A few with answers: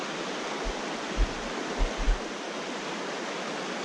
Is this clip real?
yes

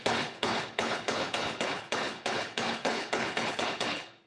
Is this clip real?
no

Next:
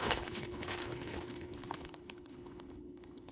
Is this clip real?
no